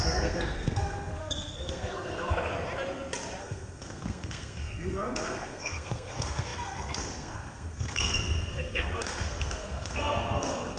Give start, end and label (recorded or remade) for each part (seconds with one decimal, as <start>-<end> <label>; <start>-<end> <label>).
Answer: 0.0-2.5 remade; 2.5-3.4 recorded; 3.4-10.8 remade